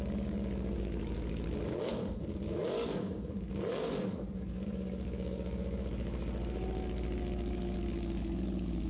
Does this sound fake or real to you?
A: fake